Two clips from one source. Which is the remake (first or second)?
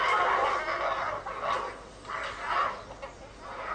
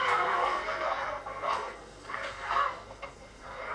second